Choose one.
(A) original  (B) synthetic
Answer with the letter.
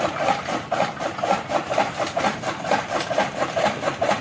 A